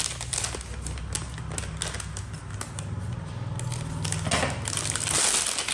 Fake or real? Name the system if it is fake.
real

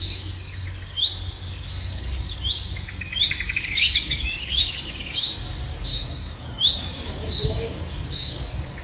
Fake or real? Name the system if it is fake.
fake, codec, DAC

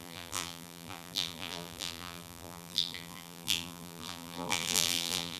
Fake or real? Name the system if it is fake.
fake, vocoder, BigVGAN v2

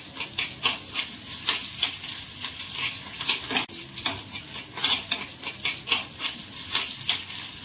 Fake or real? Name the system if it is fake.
real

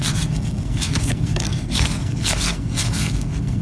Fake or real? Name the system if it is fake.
fake, codec, SNAC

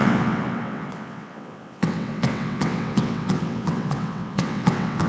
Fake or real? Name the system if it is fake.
fake, vocoder, WaveNeXt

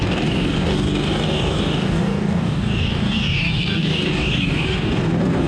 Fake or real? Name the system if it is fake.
fake, codec, DAC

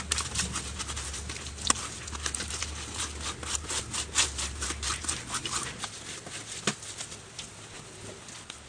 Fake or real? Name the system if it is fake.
real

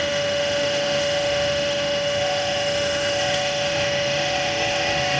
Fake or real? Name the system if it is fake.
fake, autoencoder, DAC-VAE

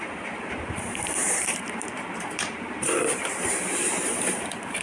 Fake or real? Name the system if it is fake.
fake, vocoder, BigVGAN v2